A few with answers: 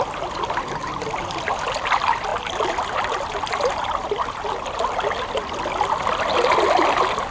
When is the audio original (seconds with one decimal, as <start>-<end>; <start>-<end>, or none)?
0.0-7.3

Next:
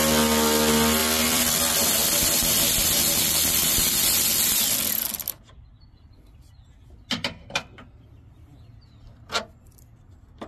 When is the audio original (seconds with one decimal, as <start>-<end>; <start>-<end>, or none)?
0.0-1.0; 3.2-3.6; 6.3-10.5

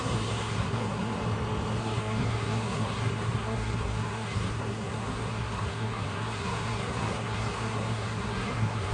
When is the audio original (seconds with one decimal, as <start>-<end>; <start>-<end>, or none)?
1.2-1.8

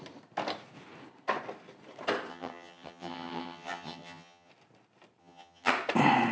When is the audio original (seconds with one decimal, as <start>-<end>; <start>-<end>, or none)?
0.0-2.3; 4.5-5.2; 5.7-6.3